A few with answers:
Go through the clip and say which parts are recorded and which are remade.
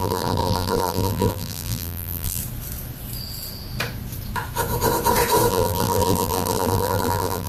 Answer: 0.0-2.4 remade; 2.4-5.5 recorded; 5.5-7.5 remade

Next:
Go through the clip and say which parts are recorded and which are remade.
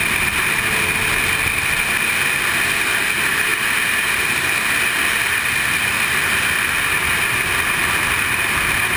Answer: 0.0-9.0 recorded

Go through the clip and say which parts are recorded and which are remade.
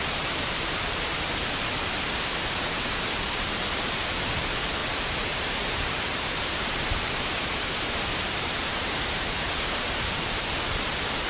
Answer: 0.0-1.3 remade; 1.3-4.8 recorded; 4.8-9.5 remade; 9.5-11.3 recorded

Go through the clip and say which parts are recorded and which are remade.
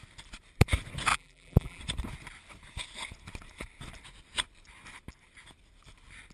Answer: 0.0-1.1 recorded; 1.1-1.8 remade; 1.8-6.3 recorded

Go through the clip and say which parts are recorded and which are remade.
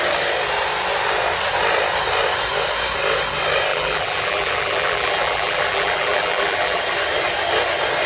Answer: 0.0-3.7 recorded; 3.7-6.8 remade; 6.8-8.1 recorded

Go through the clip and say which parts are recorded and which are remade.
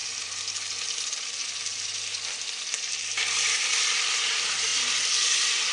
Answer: 0.0-4.7 remade; 4.7-5.7 recorded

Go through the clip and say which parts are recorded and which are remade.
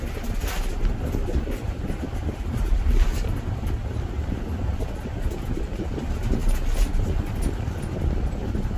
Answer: 0.0-1.6 recorded; 1.6-4.4 remade; 4.4-8.8 recorded